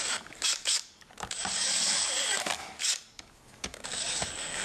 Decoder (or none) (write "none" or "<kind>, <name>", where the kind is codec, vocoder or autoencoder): codec, DAC